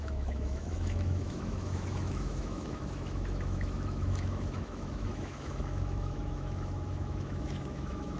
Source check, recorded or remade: remade